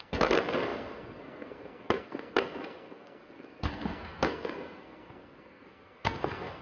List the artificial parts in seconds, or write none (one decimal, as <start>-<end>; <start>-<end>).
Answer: 0.0-6.6